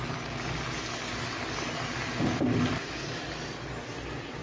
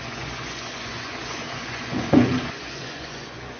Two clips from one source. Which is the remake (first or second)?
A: second